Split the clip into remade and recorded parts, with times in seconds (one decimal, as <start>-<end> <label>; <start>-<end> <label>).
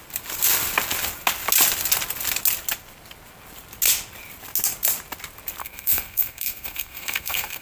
0.0-5.6 recorded; 5.6-7.6 remade